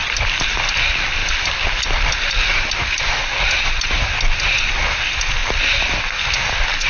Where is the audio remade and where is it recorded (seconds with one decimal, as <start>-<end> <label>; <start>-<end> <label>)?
0.0-6.9 recorded

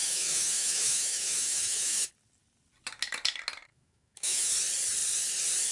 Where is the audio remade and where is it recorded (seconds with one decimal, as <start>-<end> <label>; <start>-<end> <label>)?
0.0-2.1 remade; 2.1-3.7 recorded; 3.7-4.5 remade; 4.5-5.7 recorded

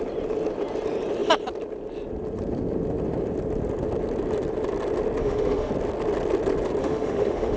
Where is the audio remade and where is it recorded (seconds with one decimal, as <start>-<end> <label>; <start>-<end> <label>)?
0.0-5.2 recorded; 5.2-5.7 remade; 5.7-6.8 recorded; 6.8-7.6 remade

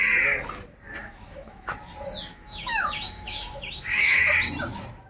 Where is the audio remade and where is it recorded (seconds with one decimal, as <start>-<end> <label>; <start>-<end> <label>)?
0.0-1.0 recorded; 1.0-1.7 remade; 1.7-2.3 recorded; 2.3-4.2 remade; 4.2-5.1 recorded

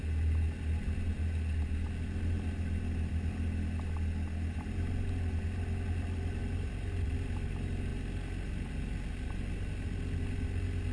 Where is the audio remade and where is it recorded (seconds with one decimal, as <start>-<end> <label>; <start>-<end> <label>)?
0.0-10.9 recorded

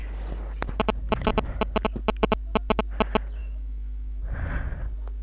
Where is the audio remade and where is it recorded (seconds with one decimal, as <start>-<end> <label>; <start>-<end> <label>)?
0.0-3.4 recorded; 3.4-4.2 remade; 4.2-5.2 recorded

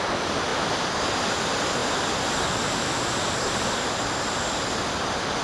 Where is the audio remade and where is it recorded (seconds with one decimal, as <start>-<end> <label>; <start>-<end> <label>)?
0.0-5.4 recorded

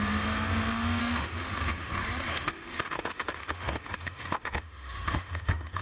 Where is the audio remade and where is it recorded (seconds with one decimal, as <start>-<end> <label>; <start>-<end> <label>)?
0.0-1.0 recorded; 1.0-1.9 remade; 1.9-2.3 recorded; 2.3-5.8 remade